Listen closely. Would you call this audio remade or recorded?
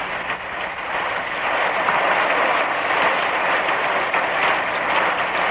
recorded